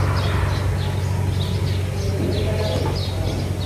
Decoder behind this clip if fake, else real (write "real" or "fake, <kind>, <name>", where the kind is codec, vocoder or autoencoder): real